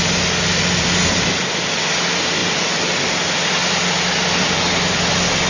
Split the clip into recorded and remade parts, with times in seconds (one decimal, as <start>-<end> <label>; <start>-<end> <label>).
0.0-2.4 recorded; 2.4-3.0 remade; 3.0-5.5 recorded

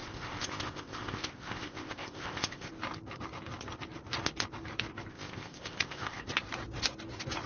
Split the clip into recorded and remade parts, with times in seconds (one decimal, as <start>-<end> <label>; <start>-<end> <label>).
0.0-2.7 remade; 2.7-5.1 recorded; 5.1-6.2 remade; 6.2-7.5 recorded

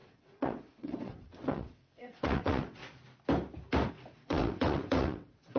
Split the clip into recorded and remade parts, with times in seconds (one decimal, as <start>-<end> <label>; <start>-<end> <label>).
0.0-2.8 remade; 2.8-3.9 recorded; 3.9-5.6 remade

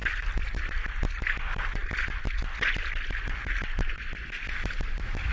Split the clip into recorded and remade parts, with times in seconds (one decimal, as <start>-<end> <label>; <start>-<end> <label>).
0.0-5.3 recorded

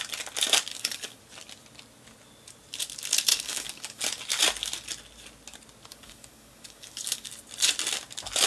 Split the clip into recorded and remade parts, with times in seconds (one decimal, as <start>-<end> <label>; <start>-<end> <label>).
0.0-0.7 recorded; 0.7-1.2 remade; 1.2-3.3 recorded; 3.3-4.0 remade; 4.0-5.9 recorded; 5.9-7.3 remade; 7.3-8.5 recorded